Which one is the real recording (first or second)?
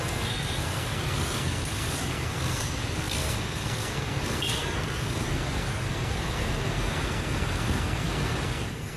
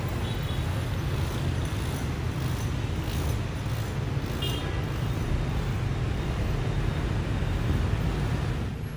second